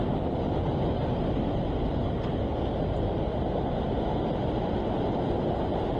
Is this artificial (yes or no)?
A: no